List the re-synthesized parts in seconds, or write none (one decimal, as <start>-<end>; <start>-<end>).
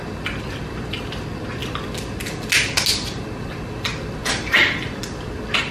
none